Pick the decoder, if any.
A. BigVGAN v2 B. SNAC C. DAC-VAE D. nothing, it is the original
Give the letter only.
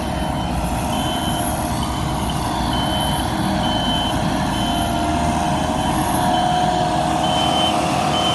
D